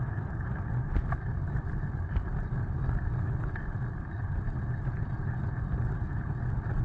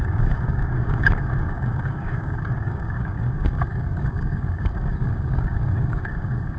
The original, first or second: first